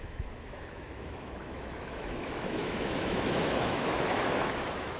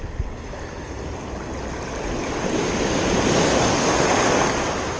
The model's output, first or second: first